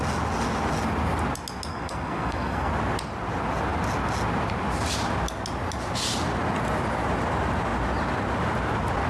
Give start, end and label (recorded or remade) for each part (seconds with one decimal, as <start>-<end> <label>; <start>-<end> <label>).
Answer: 0.0-1.7 recorded; 1.7-2.7 remade; 2.7-9.1 recorded